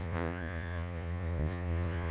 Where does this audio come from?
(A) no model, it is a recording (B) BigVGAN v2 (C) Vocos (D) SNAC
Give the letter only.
C